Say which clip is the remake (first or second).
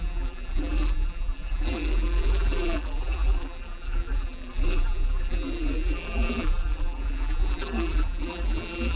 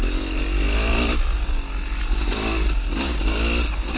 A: first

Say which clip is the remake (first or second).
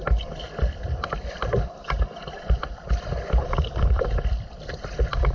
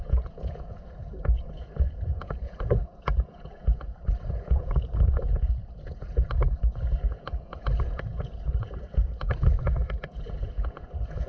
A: second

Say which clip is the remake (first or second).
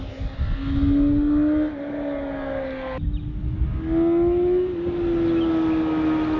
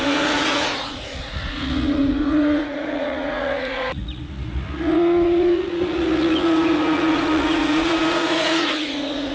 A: second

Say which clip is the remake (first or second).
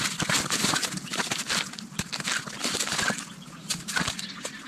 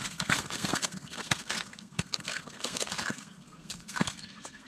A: second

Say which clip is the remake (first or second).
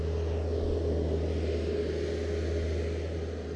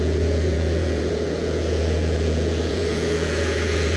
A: second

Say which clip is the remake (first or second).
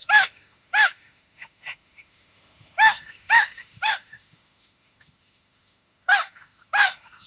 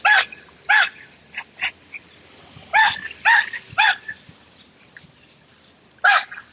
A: first